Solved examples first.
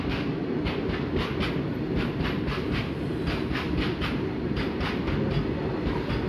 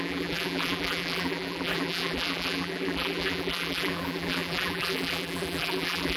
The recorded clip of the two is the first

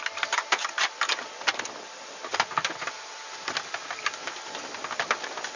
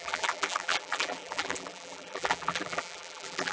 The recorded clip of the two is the first